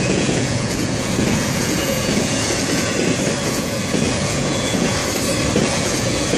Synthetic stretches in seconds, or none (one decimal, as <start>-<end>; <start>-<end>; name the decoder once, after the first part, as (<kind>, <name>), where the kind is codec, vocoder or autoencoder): 0.0-2.9 (vocoder, Vocos); 3.4-5.0; 5.6-6.4